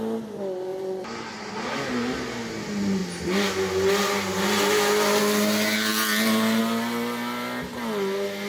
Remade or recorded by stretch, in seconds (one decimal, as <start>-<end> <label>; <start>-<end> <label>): 0.0-0.7 recorded; 0.7-1.4 remade; 1.4-5.9 recorded; 5.9-6.6 remade; 6.6-8.5 recorded

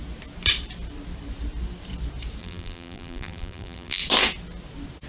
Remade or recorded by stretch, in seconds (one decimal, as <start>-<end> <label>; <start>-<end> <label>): 0.0-2.4 recorded; 2.4-4.0 remade; 4.0-5.1 recorded

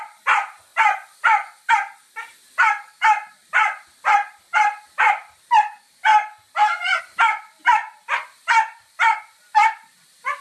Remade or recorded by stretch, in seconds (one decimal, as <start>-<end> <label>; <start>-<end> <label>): 0.0-0.7 remade; 0.7-1.7 recorded; 1.7-6.1 remade; 6.1-7.0 recorded; 7.0-10.4 remade